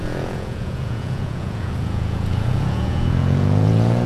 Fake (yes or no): yes